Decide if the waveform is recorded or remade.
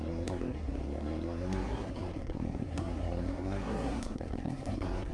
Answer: remade